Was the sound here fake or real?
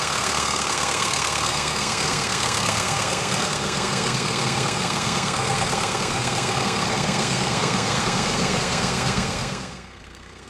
fake